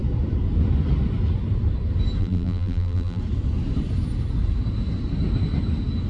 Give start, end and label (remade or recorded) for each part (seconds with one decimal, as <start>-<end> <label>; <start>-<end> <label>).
0.0-2.2 recorded; 2.2-3.2 remade; 3.2-6.1 recorded